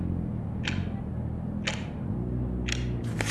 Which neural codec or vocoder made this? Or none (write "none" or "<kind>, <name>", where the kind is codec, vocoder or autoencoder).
none